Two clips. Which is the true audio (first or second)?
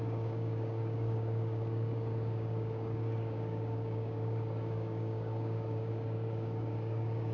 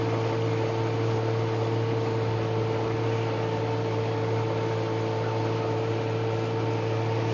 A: second